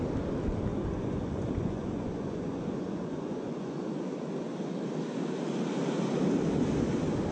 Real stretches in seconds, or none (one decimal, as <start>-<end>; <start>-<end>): 0.0-0.7; 3.9-7.3